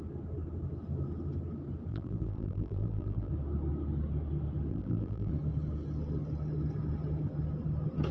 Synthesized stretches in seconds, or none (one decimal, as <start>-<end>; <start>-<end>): 1.9-3.3; 4.7-5.3

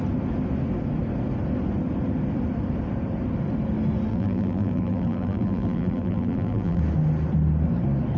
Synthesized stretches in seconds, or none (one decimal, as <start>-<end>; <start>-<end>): 4.1-6.8